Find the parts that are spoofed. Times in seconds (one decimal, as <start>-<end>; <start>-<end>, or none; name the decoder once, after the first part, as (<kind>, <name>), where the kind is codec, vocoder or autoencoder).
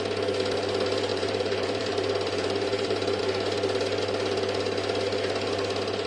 1.1-3.2 (vocoder, BigVGAN v2)